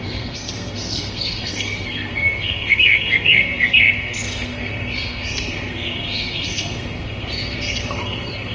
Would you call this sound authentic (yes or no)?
no